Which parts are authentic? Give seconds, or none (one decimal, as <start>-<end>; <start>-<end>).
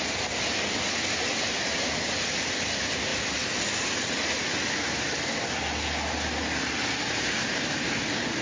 0.0-8.4